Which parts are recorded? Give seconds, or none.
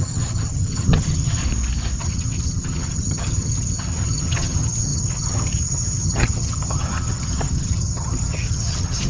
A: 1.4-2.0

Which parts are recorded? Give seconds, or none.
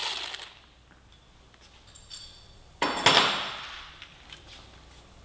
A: 0.0-5.2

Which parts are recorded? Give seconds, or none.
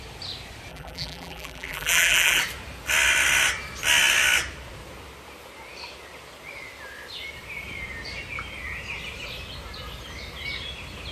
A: 0.0-0.7; 2.4-11.1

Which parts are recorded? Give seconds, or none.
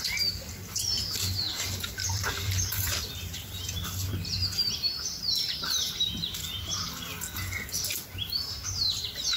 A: 0.0-2.0; 5.6-9.4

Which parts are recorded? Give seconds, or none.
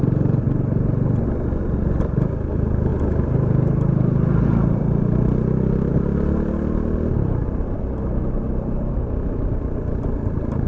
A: 0.0-10.7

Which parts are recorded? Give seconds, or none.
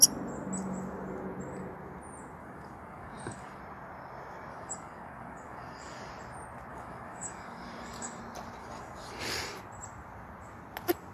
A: 0.0-2.4; 3.6-4.5; 6.1-6.7; 8.2-8.6; 9.2-11.1